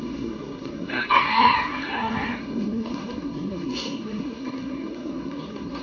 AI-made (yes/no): yes